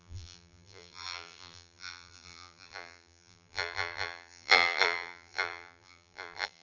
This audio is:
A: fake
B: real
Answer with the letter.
A